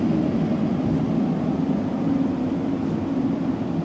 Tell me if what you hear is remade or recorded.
recorded